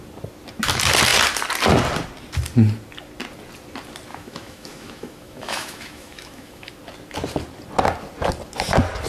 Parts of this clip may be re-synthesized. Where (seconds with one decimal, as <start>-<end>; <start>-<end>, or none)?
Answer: 4.1-6.7